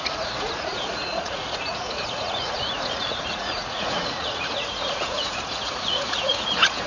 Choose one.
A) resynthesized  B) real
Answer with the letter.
A